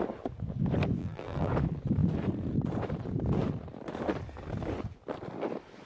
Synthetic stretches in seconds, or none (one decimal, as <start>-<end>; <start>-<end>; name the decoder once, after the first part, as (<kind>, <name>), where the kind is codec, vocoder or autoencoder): 1.0-1.5 (vocoder, BigVGAN v2)